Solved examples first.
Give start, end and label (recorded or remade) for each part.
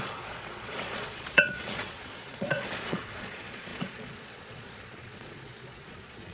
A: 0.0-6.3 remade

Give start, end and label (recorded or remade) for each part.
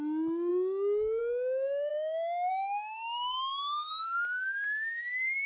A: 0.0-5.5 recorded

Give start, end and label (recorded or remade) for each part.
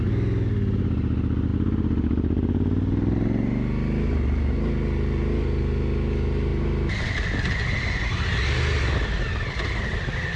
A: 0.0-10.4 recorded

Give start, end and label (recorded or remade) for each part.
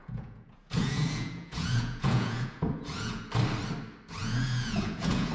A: 0.0-3.2 remade; 3.2-4.2 recorded; 4.2-5.3 remade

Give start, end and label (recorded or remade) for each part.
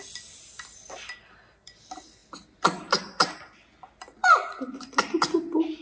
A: 0.0-4.2 recorded; 4.2-4.7 remade; 4.7-5.8 recorded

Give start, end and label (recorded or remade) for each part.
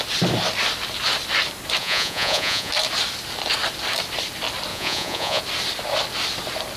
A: 0.0-1.8 recorded; 1.8-2.7 remade; 2.7-4.7 recorded; 4.7-5.4 remade; 5.4-6.8 recorded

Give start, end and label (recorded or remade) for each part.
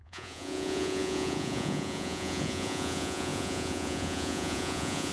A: 0.0-5.1 remade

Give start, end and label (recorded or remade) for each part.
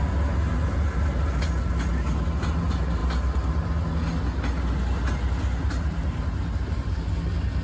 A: 0.0-7.6 recorded